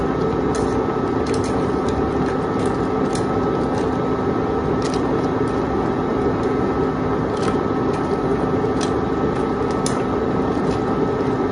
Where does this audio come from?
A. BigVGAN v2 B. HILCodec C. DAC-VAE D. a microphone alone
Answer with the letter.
D